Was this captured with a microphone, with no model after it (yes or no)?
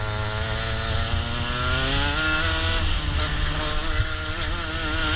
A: yes